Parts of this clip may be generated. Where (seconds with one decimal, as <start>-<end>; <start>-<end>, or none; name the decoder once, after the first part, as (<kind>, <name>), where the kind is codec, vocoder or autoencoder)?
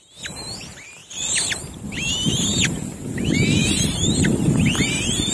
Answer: 1.0-2.1 (vocoder, BigVGAN v2); 3.6-4.2